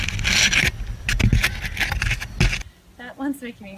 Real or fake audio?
real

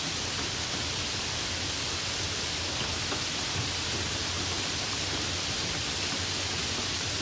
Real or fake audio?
real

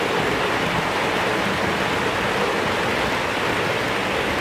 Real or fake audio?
real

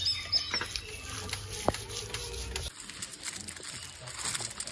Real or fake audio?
real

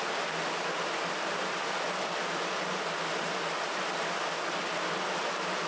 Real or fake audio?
real